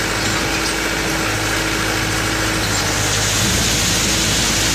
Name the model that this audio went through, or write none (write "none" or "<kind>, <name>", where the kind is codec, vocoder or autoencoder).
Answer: none